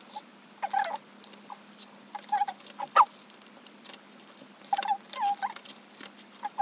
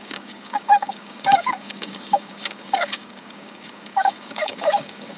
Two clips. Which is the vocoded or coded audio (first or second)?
second